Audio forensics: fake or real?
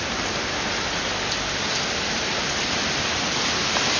real